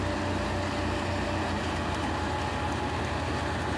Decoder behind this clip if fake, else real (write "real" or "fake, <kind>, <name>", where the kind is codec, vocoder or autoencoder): real